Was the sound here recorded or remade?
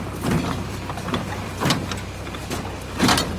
recorded